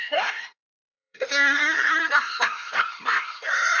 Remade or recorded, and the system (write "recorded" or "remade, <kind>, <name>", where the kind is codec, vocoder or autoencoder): remade, codec, SNAC